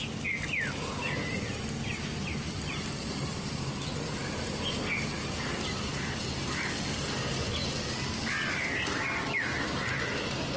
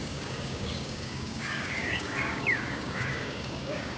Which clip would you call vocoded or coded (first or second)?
second